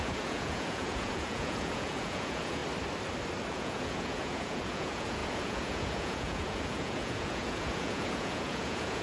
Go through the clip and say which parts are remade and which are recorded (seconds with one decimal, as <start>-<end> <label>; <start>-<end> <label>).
0.0-2.6 remade; 2.6-3.5 recorded; 3.5-9.0 remade

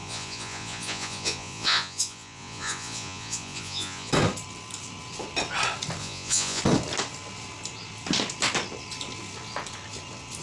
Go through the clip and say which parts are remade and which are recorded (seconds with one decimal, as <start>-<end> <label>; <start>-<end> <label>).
0.0-4.1 remade; 4.1-6.0 recorded; 6.0-6.6 remade; 6.6-10.4 recorded

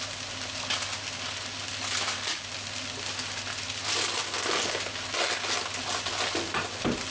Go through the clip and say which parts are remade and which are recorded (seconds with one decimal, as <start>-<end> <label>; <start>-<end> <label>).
0.0-7.1 recorded

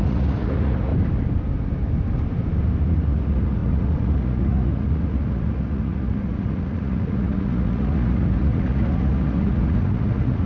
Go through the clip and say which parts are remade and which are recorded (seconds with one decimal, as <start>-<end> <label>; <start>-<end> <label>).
0.0-0.9 remade; 0.9-2.8 recorded; 2.8-10.5 remade

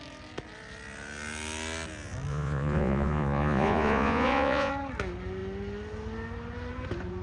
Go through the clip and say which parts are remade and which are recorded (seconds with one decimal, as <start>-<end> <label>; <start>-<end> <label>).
0.0-2.3 recorded; 2.3-4.7 remade; 4.7-7.2 recorded

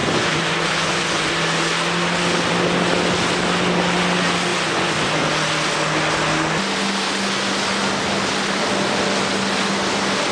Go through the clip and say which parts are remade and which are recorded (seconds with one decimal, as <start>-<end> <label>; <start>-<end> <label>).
0.0-1.3 remade; 1.3-4.5 recorded; 4.5-5.1 remade; 5.1-10.3 recorded